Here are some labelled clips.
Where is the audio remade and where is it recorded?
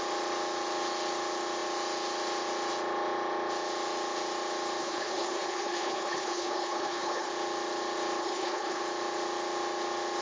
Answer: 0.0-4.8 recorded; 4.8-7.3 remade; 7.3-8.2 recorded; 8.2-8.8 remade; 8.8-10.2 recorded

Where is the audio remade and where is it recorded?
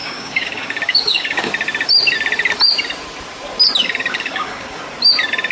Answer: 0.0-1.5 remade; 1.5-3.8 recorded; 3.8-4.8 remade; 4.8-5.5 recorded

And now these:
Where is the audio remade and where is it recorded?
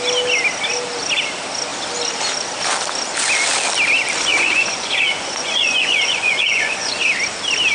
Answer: 0.0-4.3 recorded; 4.3-7.0 remade; 7.0-7.7 recorded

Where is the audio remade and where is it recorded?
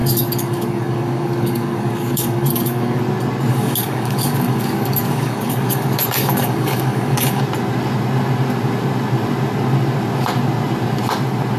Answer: 0.0-3.0 remade; 3.0-3.5 recorded; 3.5-7.4 remade; 7.4-11.6 recorded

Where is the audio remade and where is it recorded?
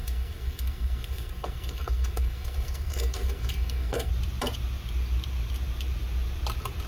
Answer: 0.0-4.1 remade; 4.1-6.9 recorded